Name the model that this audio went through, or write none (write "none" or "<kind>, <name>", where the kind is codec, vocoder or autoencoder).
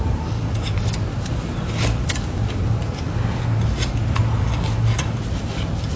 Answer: none